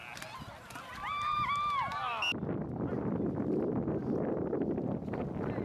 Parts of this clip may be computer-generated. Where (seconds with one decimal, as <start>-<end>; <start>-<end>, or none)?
none